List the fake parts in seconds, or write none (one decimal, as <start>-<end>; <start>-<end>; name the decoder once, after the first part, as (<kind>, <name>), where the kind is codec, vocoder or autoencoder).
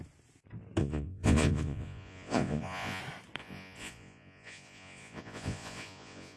0.8-3.0 (vocoder, Vocos); 3.4-6.4